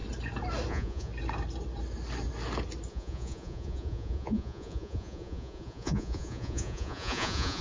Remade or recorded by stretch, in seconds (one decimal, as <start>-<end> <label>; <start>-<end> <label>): 0.0-0.7 recorded; 0.7-1.1 remade; 1.1-2.9 recorded; 2.9-7.6 remade